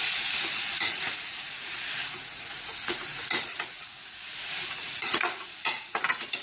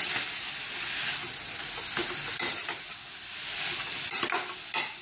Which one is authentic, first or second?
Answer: second